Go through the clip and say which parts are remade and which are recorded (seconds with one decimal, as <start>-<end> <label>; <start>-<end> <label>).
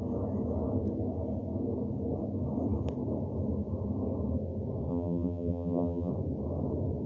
0.0-4.9 recorded; 4.9-6.1 remade; 6.1-7.1 recorded